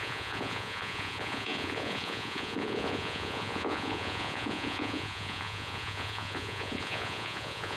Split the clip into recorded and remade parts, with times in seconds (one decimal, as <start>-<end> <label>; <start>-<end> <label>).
0.0-7.8 remade